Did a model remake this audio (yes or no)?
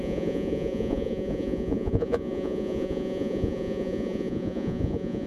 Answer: yes